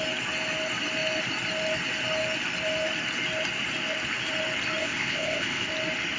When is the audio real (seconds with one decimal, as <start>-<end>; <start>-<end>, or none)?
0.0-4.8; 5.7-6.2